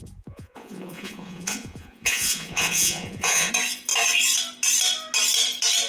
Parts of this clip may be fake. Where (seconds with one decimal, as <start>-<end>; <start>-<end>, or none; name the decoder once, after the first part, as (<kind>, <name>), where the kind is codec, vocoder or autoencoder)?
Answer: 0.0-3.5 (vocoder, Vocos)